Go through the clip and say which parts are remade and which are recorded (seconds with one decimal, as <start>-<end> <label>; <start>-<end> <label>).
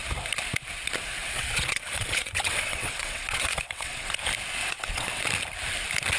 0.0-1.2 recorded; 1.2-4.1 remade; 4.1-4.6 recorded; 4.6-5.2 remade; 5.2-6.2 recorded